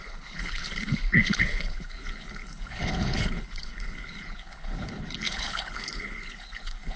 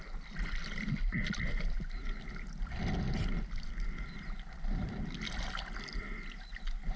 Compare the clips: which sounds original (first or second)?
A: second